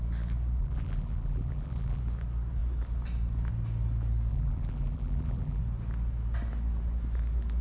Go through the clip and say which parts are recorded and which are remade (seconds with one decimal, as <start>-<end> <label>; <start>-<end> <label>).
0.0-0.6 recorded; 0.6-2.0 remade; 2.0-4.3 recorded; 4.3-5.6 remade; 5.6-7.6 recorded